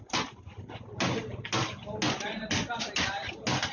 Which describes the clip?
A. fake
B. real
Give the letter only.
B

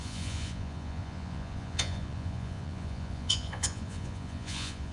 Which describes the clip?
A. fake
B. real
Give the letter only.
A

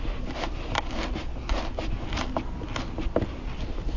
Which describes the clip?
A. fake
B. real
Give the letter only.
B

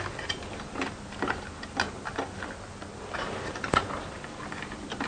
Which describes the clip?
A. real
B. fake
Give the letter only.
A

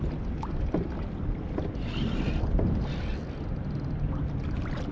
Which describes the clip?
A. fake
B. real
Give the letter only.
B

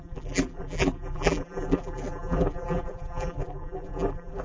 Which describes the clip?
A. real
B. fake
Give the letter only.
B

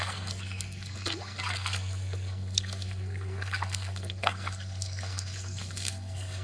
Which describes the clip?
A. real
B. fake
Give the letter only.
B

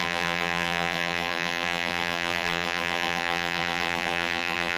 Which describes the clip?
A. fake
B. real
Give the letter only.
A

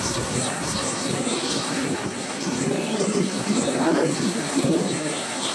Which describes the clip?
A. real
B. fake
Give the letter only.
B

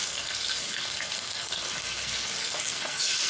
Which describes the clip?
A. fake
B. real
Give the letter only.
A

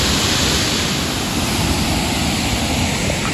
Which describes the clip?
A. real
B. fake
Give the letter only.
A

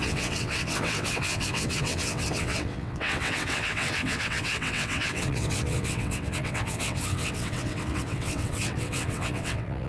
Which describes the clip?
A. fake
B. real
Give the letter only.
A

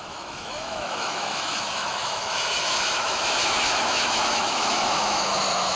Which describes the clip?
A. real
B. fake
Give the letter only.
B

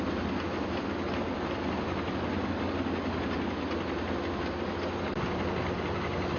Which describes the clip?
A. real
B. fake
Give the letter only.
A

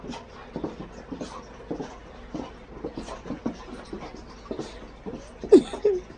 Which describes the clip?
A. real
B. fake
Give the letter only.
A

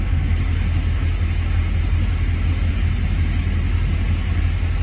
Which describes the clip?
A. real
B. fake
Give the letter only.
A